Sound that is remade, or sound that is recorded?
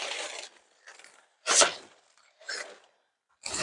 recorded